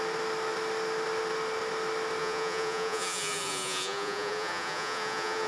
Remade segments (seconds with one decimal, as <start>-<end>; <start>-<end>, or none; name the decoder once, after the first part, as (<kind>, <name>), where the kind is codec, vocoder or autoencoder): 2.2-5.5 (vocoder, Vocos)